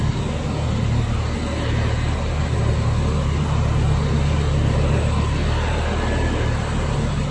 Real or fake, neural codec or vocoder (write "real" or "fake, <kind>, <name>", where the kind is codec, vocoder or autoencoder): real